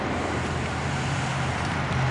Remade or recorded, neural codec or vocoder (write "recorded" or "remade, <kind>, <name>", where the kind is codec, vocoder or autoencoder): remade, vocoder, BigVGAN v2